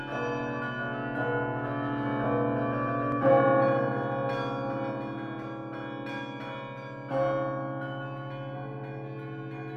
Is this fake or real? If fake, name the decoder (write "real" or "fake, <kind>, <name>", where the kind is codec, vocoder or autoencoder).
real